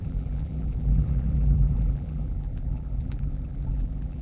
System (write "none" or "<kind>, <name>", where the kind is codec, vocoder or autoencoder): vocoder, BigVGAN v2